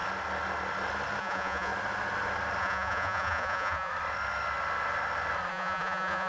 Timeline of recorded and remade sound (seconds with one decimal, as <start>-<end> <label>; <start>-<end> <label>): 0.0-1.2 recorded; 1.2-1.7 remade; 1.7-2.6 recorded; 2.6-3.9 remade; 3.9-5.5 recorded; 5.5-6.3 remade